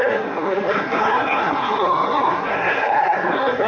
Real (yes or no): no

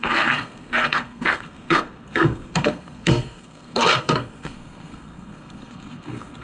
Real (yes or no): no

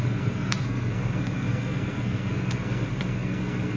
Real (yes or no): no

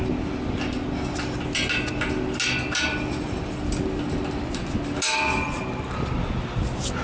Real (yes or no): yes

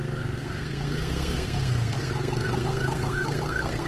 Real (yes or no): no